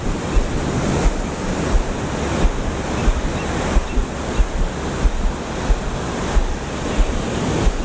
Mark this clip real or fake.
real